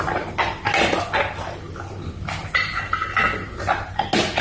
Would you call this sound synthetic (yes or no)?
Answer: no